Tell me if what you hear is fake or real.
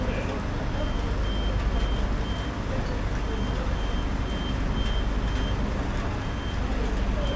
real